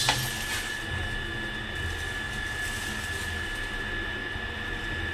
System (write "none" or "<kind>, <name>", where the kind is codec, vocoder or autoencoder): none